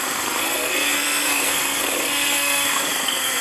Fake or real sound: fake